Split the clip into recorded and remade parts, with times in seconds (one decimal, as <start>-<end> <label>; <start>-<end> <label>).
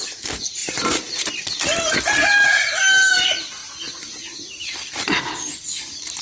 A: 0.0-0.6 recorded; 0.6-1.4 remade; 1.4-6.2 recorded